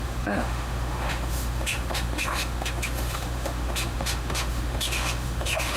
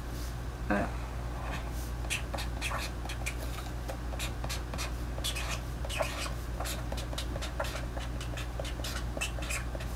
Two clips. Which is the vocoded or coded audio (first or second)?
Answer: first